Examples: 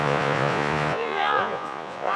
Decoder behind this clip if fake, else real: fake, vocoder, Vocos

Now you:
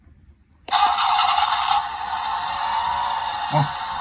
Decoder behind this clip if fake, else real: fake, vocoder, BigVGAN v2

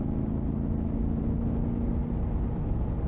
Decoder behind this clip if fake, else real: real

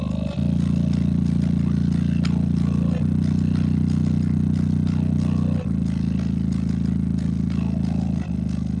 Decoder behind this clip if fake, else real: real